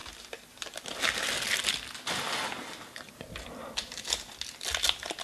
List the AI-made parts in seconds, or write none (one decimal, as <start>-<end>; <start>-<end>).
none